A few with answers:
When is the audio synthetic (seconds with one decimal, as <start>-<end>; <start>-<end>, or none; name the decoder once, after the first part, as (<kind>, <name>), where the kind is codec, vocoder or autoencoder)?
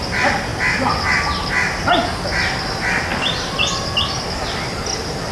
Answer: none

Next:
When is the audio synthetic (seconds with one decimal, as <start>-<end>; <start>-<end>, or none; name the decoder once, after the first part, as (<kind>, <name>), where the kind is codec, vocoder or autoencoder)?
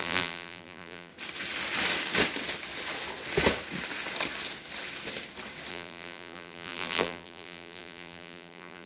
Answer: 0.0-1.1 (vocoder, BigVGAN v2); 5.7-8.9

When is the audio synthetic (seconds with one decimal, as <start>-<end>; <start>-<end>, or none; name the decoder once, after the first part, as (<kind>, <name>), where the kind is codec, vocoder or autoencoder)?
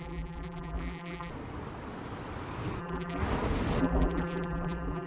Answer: 0.0-1.3 (vocoder, BigVGAN v2); 2.8-3.2; 3.8-5.1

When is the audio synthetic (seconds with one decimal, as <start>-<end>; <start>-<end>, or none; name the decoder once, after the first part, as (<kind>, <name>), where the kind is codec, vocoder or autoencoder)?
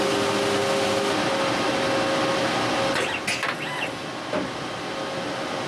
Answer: 4.0-4.6 (vocoder, BigVGAN v2)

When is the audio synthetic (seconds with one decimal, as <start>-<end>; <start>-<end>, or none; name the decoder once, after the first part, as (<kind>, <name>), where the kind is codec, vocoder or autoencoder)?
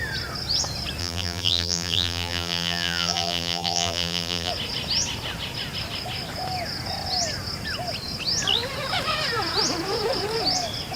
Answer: 1.0-4.5 (vocoder, BigVGAN v2)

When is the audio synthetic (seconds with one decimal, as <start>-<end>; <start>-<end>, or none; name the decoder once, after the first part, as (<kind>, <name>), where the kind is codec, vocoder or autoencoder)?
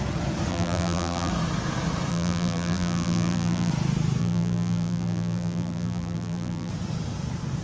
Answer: 0.5-1.3 (vocoder, BigVGAN v2); 2.1-3.7; 4.2-6.7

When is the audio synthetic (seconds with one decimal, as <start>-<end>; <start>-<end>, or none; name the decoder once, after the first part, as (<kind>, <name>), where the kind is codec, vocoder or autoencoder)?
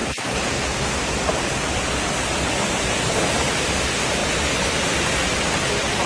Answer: 0.0-4.2 (vocoder, BigVGAN v2)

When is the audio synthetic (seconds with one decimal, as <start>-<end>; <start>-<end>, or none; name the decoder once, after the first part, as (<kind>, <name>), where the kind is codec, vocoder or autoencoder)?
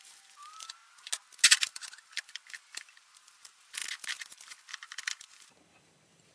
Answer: 0.0-0.8 (vocoder, BigVGAN v2); 1.5-3.8; 4.5-6.3